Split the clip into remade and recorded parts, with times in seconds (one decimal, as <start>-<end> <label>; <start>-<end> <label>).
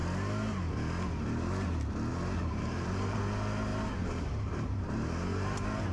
0.0-2.1 recorded; 2.1-3.2 remade; 3.2-3.7 recorded; 3.7-5.9 remade